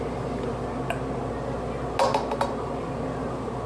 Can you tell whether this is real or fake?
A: real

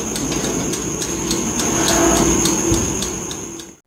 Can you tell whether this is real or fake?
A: real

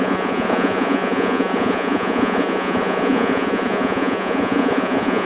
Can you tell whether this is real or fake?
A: fake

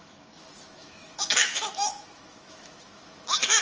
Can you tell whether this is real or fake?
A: fake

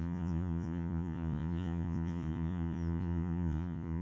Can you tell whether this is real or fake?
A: fake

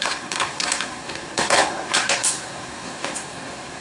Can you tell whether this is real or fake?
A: fake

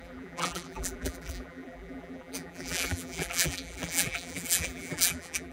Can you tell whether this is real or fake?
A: fake